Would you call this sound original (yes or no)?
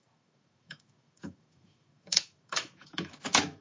no